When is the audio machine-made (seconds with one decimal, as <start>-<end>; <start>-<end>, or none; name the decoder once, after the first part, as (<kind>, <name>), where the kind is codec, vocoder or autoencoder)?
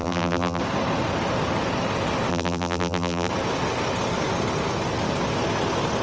0.0-0.6 (vocoder, BigVGAN v2); 2.3-3.3